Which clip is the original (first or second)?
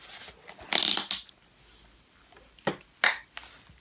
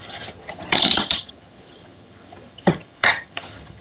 first